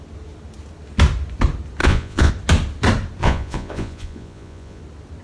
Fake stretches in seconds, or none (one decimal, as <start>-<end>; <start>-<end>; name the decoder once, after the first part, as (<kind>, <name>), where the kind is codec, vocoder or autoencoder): 1.8-2.3 (vocoder, Vocos); 3.2-4.8